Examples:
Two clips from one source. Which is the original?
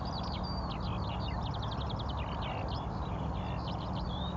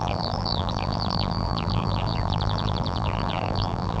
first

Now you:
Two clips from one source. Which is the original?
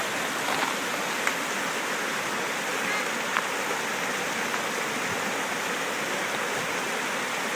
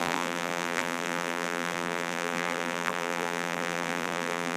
first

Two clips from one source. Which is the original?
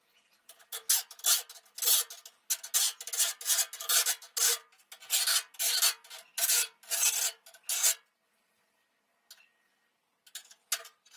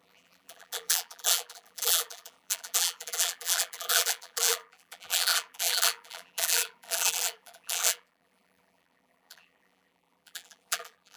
first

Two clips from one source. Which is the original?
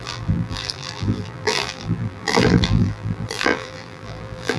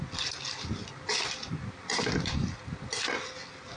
second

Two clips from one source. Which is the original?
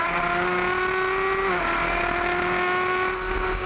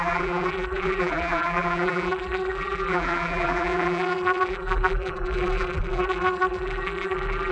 first